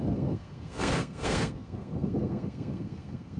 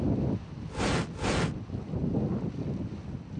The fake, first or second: first